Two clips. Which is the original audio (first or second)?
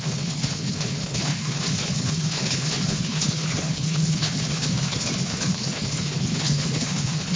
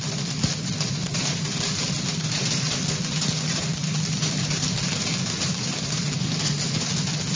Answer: second